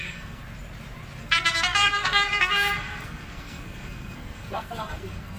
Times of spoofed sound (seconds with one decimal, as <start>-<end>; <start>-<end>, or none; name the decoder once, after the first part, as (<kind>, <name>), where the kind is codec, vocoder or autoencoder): 0.0-0.4 (codec, SNAC); 1.2-5.4